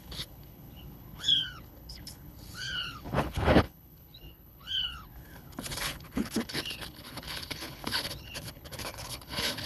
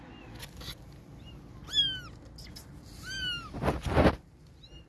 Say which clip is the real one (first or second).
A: second